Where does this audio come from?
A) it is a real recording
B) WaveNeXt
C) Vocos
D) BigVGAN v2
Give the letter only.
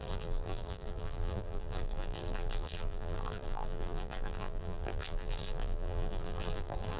D